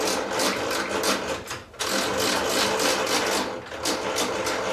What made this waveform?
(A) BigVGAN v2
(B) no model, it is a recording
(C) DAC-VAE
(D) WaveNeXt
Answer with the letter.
B